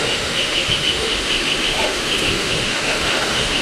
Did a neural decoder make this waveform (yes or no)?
yes